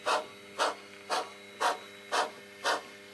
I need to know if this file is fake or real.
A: real